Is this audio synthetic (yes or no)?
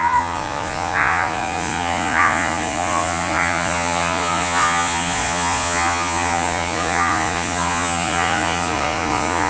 yes